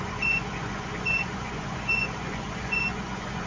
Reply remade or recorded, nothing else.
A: remade